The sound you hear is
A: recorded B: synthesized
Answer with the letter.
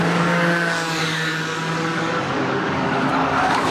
B